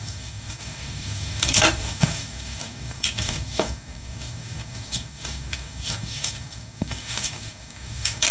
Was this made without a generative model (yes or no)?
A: no